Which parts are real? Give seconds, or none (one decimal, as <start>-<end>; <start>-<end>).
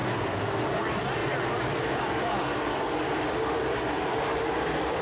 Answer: 0.0-0.6